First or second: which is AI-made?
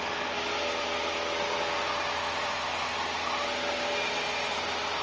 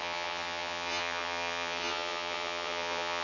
second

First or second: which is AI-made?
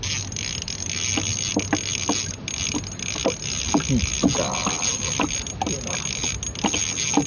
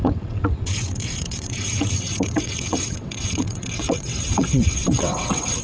second